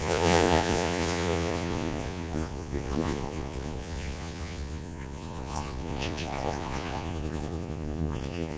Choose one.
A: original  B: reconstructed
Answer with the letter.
B